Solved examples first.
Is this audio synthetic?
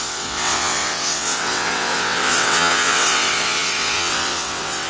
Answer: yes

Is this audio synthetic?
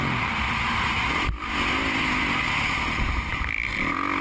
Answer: no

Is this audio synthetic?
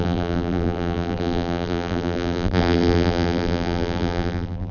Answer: yes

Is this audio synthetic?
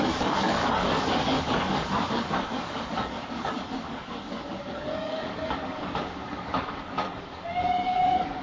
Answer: yes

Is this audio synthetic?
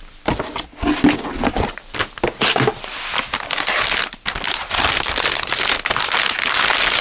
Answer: no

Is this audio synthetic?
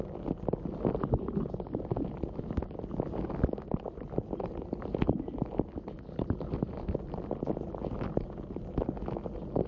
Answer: no